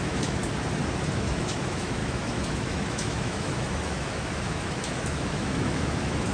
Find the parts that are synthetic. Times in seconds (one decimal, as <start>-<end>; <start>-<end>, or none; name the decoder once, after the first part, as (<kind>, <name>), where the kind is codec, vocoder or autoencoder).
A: 0.0-0.4 (autoencoder, DAC-VAE); 1.1-6.3